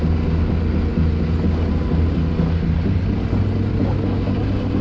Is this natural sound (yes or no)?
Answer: yes